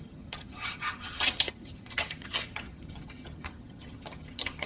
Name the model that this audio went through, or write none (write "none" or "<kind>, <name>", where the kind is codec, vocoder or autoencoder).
vocoder, HiFi-GAN